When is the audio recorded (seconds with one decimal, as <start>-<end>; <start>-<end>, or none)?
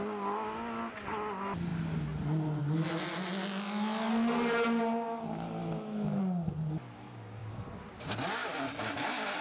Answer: 0.0-5.6; 6.2-9.4